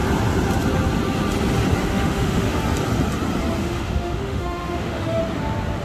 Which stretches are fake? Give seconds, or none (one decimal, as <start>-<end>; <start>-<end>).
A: 1.9-2.6; 3.6-5.2